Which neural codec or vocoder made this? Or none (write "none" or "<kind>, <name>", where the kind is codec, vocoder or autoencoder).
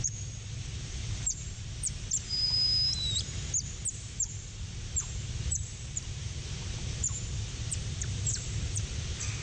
vocoder, BigVGAN v2